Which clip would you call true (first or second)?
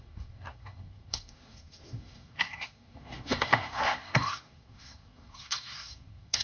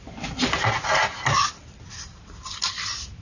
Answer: second